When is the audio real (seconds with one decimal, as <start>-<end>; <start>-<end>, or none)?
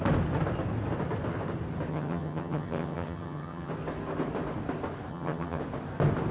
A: 0.0-1.9; 3.7-5.1; 5.6-6.3